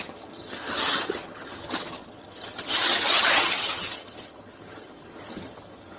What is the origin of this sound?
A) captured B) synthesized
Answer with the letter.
B